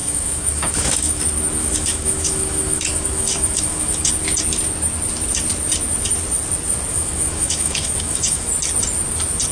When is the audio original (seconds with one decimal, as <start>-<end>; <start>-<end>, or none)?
1.2-1.6; 4.1-6.9; 8.5-9.5